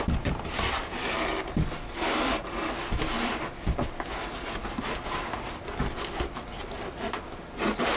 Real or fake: real